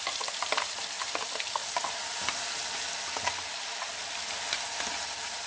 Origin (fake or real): real